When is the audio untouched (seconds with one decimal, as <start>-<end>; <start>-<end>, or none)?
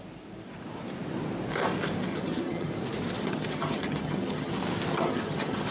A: 0.0-2.1; 2.7-3.2; 4.5-4.9